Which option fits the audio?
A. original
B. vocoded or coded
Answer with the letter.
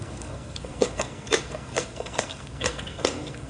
B